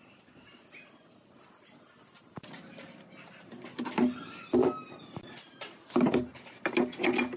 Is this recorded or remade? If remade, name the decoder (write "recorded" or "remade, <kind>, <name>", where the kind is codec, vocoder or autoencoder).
recorded